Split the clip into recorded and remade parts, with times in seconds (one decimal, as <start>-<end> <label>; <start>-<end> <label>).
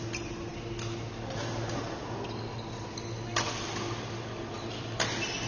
0.0-5.5 recorded